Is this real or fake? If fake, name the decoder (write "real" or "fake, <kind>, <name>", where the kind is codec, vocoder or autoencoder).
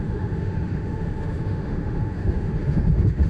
fake, autoencoder, DAC-VAE